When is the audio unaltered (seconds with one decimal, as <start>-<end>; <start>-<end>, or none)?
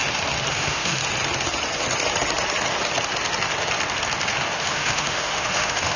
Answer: 0.0-0.5; 1.0-4.6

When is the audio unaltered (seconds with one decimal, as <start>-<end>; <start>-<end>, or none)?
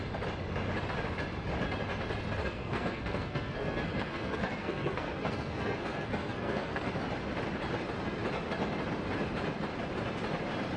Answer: 0.0-2.4; 6.9-10.8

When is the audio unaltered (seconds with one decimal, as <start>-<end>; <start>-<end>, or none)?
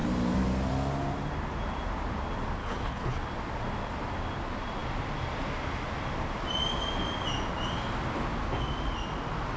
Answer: 0.0-2.6; 3.2-9.6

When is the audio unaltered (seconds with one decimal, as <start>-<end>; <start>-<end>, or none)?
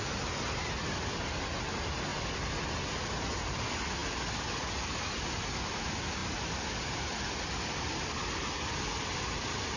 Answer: 0.0-9.8